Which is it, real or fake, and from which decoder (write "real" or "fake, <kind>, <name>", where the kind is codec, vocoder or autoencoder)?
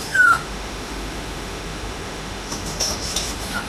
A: fake, autoencoder, DAC-VAE